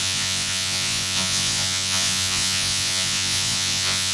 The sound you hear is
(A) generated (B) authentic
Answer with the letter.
A